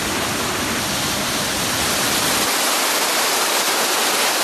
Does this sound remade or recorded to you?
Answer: recorded